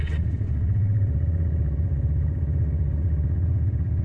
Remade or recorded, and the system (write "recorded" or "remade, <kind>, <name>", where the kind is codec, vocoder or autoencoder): remade, vocoder, WaveNeXt